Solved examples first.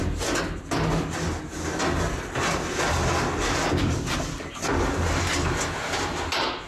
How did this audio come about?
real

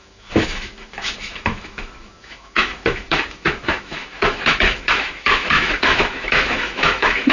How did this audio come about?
fake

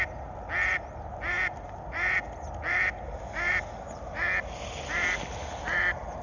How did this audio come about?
real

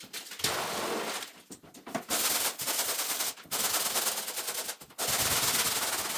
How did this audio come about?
real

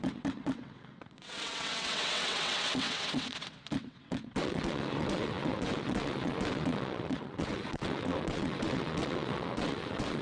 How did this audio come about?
fake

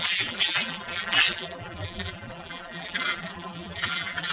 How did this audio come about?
fake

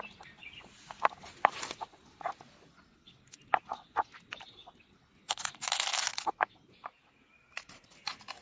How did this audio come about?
real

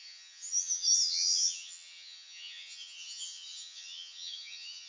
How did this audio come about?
fake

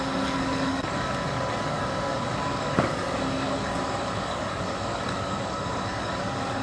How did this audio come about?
fake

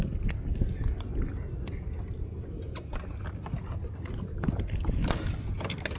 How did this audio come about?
real